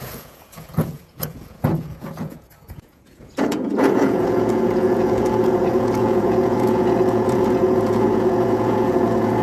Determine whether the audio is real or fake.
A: fake